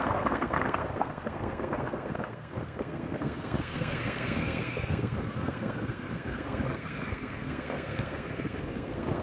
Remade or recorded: remade